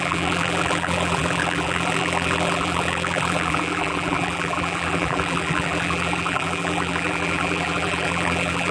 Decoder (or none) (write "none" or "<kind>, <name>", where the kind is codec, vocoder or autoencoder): vocoder, BigVGAN v2